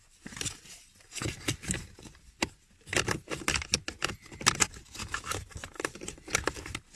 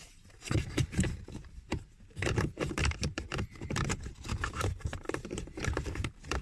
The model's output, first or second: second